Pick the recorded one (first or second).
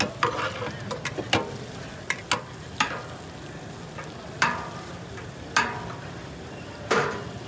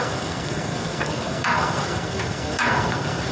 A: first